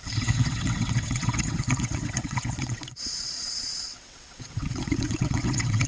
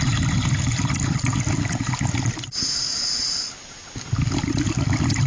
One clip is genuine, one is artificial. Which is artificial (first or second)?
first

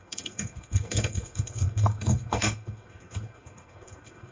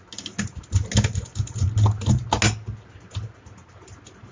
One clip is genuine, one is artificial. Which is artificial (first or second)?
first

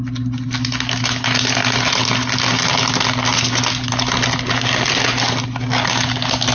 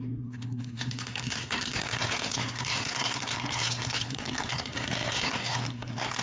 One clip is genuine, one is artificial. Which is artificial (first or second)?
second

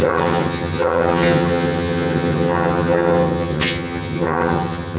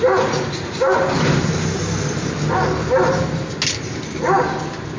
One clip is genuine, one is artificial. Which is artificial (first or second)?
first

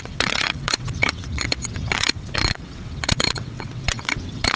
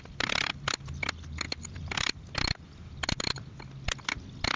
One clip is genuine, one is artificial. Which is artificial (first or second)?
first